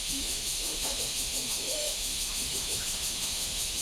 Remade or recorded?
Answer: remade